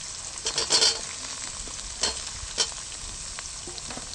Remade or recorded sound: recorded